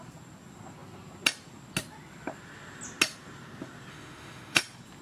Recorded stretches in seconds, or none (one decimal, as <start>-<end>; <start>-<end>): 0.0-3.9; 4.6-5.0